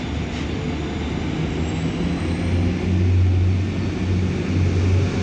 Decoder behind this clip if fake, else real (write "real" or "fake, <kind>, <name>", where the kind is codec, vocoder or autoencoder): real